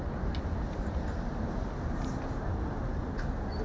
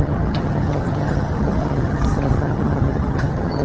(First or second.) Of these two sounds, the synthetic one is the second